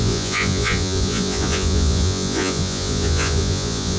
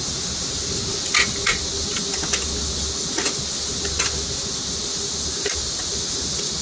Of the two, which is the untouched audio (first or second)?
second